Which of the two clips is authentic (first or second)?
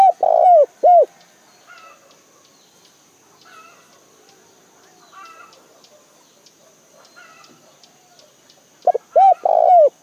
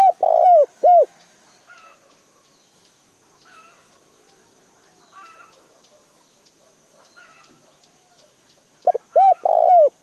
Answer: first